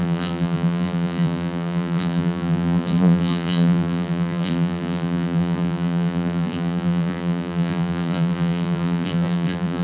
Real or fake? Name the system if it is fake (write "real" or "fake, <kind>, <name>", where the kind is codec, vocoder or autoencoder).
fake, vocoder, BigVGAN v2